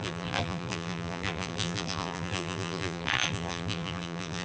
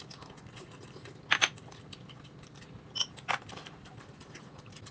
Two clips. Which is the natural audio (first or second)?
second